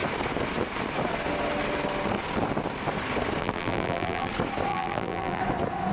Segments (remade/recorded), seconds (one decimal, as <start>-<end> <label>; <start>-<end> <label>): 0.0-3.4 recorded; 3.4-4.3 remade; 4.3-4.7 recorded; 4.7-5.4 remade; 5.4-5.9 recorded